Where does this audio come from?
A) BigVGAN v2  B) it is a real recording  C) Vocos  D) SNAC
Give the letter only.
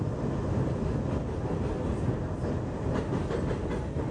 B